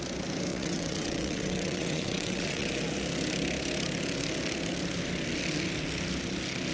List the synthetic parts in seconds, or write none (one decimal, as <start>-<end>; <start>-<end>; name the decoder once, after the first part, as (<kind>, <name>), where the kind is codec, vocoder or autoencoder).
0.5-2.7 (vocoder, WaveNeXt)